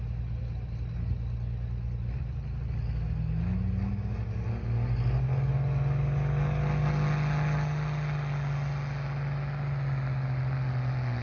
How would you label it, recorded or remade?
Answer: recorded